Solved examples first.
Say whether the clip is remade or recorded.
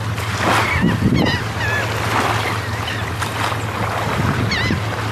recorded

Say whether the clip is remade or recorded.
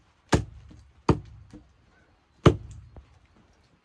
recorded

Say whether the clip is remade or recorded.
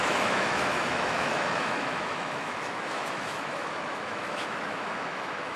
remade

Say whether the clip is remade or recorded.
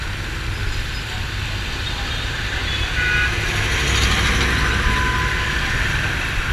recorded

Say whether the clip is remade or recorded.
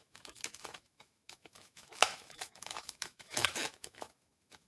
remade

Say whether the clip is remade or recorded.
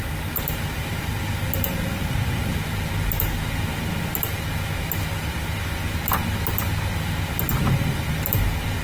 recorded